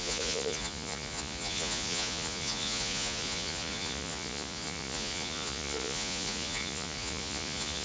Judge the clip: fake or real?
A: fake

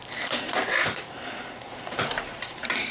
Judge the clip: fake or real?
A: fake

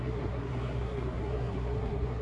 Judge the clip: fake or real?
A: fake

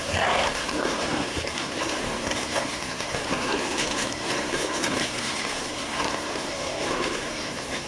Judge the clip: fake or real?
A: fake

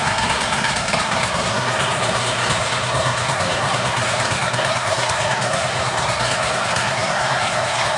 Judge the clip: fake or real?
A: fake